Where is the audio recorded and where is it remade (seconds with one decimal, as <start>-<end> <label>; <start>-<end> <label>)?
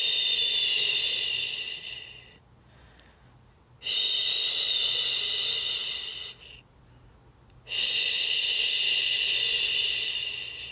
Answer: 0.0-10.7 recorded